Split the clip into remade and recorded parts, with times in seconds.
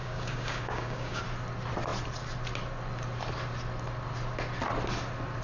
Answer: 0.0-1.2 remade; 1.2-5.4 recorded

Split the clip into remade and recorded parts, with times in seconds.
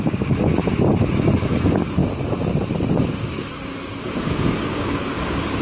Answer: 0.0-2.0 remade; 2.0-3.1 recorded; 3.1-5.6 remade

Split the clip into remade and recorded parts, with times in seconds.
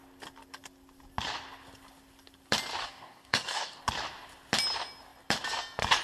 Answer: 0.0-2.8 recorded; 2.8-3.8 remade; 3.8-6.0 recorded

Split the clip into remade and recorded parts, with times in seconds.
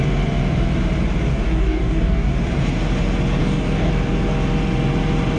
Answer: 0.0-1.3 recorded; 1.3-2.3 remade; 2.3-3.4 recorded; 3.4-3.9 remade; 3.9-5.4 recorded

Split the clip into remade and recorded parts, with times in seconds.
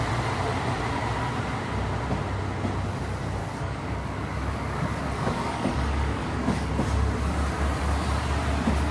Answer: 0.0-3.4 recorded; 3.4-6.7 remade; 6.7-8.9 recorded